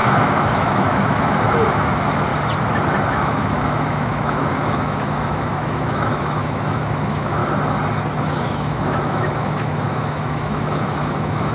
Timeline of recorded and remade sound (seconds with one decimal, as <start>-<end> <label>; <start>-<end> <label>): 0.0-2.3 remade; 2.3-3.1 recorded; 3.1-7.4 remade; 7.4-8.2 recorded; 8.2-11.5 remade